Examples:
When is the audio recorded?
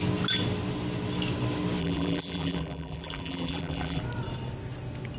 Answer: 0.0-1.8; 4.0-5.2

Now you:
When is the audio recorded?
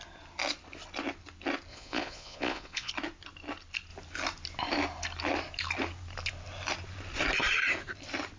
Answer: 0.0-1.7; 2.9-8.4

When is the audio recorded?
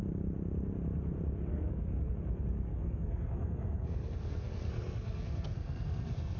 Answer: 0.0-1.5; 2.1-2.7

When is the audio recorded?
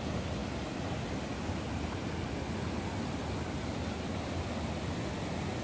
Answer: 0.0-5.6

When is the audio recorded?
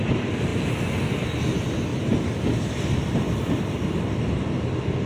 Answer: 0.0-1.9; 3.6-5.1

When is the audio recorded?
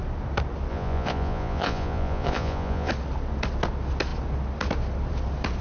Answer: 0.0-0.7; 2.9-5.6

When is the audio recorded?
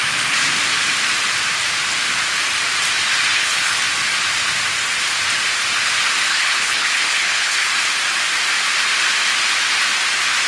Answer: 0.0-3.3; 3.8-6.3; 7.7-10.5